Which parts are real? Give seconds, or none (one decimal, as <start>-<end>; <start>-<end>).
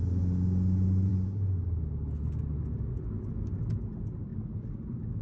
0.0-5.2